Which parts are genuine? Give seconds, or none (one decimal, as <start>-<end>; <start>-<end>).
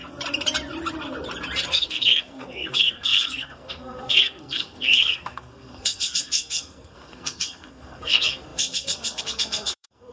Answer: 0.0-1.7